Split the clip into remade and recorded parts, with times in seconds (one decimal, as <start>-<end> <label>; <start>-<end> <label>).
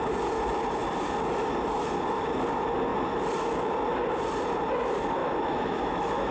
0.0-5.2 recorded; 5.2-6.3 remade